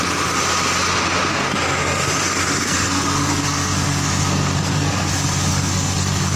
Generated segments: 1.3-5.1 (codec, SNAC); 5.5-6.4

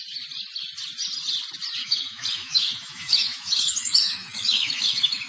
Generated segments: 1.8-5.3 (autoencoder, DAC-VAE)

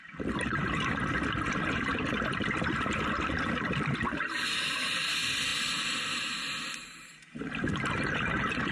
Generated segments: none

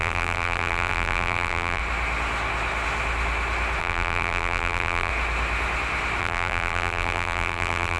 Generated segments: 0.0-1.8 (vocoder, BigVGAN v2); 3.8-5.1; 6.2-8.0

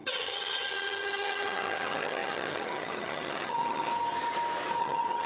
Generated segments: 0.0-3.9 (vocoder, HiFi-GAN); 4.8-5.3